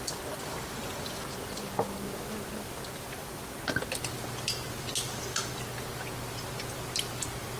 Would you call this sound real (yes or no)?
yes